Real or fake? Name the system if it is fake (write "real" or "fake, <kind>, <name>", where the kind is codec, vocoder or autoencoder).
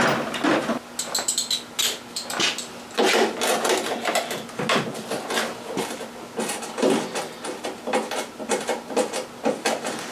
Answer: real